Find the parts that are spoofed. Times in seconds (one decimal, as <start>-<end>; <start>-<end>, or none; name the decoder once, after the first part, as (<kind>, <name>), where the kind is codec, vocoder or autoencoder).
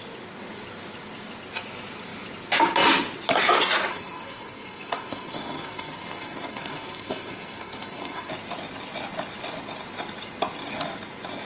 3.9-8.3 (codec, SNAC)